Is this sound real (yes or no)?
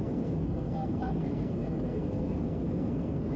no